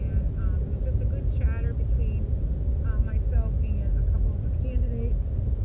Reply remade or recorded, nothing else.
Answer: recorded